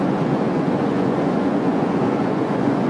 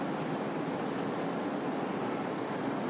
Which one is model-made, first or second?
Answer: first